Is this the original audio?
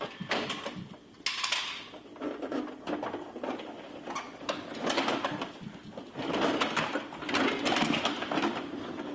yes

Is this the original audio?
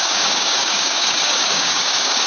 no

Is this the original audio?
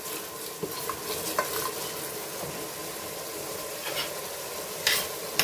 yes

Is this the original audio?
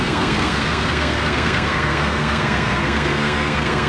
no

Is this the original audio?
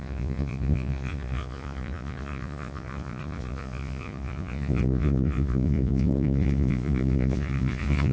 no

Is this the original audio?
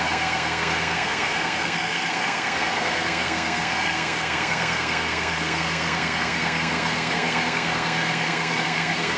no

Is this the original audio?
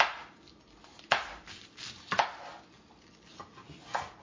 yes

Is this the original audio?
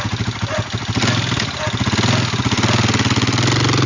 yes